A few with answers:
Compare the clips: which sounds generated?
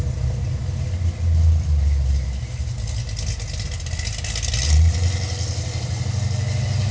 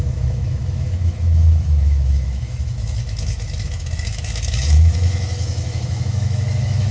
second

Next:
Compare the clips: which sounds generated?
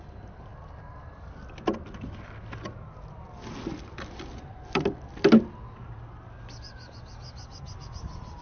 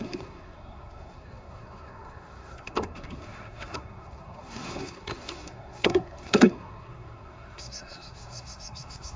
second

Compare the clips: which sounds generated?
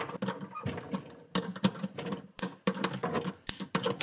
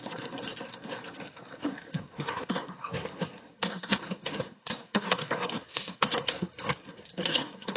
second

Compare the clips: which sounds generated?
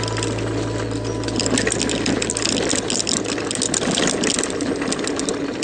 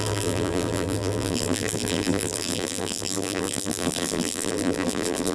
second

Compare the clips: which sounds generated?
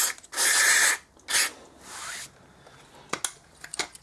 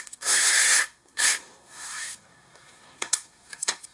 second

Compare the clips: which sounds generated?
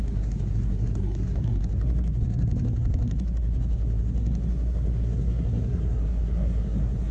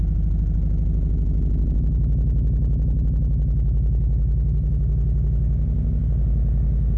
first